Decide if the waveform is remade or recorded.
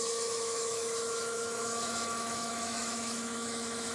remade